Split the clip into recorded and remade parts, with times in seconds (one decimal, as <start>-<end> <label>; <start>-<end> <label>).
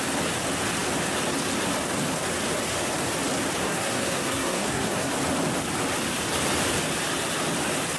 0.0-3.6 recorded; 3.6-5.1 remade; 5.1-8.0 recorded